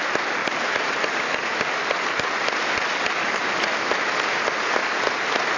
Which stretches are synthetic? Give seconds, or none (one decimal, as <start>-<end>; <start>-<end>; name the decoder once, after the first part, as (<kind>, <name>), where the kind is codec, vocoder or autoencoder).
none